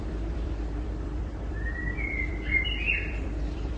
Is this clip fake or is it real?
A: fake